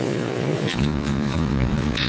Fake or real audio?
fake